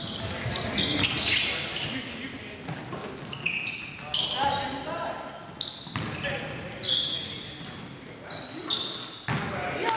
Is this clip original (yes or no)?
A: yes